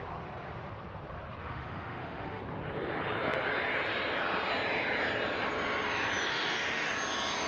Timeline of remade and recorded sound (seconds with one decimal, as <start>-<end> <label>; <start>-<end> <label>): 0.0-1.4 recorded; 1.4-2.4 remade; 2.4-6.3 recorded; 6.3-6.9 remade; 6.9-7.5 recorded